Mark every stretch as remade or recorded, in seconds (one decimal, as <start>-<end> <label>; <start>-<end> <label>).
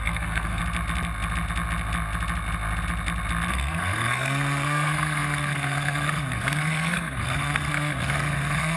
0.0-0.6 remade; 0.6-3.5 recorded; 3.5-8.8 remade